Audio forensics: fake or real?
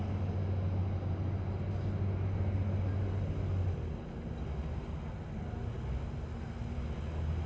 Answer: real